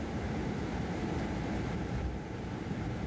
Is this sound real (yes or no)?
no